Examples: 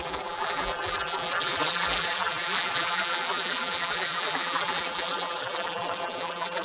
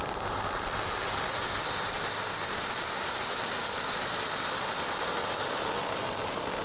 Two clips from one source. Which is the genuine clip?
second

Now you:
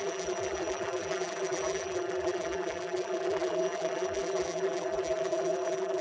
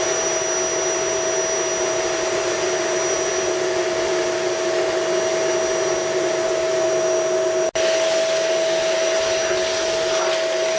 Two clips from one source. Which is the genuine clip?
second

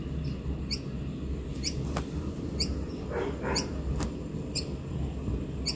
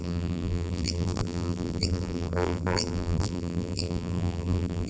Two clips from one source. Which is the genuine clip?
first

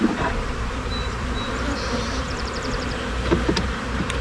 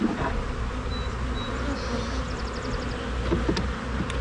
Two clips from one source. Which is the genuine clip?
second